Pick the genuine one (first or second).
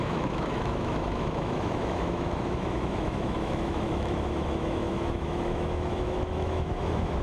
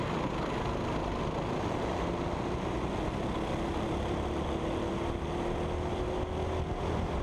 second